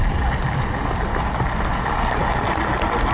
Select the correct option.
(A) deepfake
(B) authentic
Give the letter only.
B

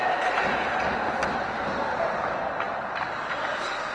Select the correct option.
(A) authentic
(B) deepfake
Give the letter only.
A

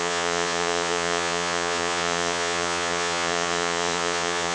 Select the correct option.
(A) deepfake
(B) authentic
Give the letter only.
A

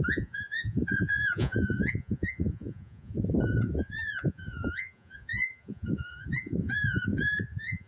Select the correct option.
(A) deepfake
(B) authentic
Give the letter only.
A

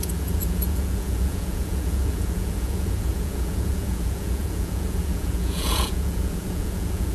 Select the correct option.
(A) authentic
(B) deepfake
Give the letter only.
B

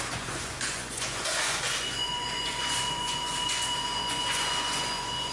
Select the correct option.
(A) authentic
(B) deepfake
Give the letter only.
B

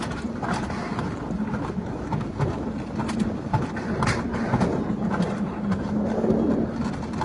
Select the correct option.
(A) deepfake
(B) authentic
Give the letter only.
B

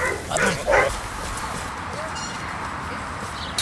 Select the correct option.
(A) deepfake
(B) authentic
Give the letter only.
B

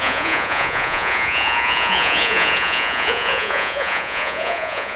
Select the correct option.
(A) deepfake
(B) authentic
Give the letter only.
A